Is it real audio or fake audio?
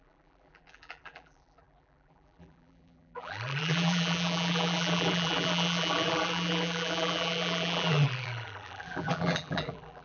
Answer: fake